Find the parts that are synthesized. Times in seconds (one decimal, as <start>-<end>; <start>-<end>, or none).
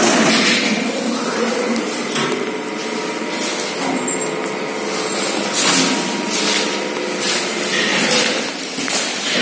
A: none